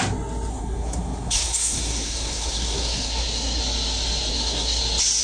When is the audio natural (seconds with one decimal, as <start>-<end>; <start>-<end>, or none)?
0.0-0.5; 3.6-4.3; 4.8-5.2